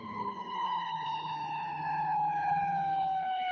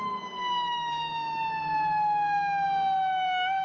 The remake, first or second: first